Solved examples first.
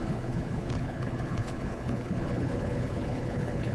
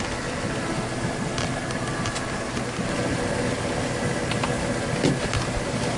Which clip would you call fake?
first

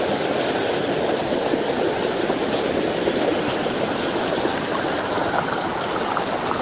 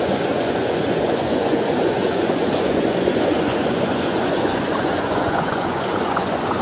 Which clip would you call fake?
second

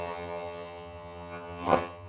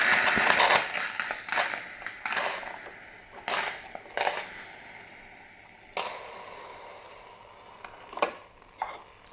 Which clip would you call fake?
first